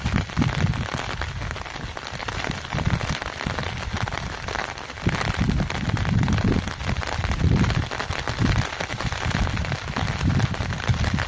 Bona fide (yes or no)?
yes